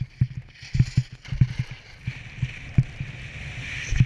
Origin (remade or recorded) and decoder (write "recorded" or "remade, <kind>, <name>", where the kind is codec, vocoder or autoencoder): recorded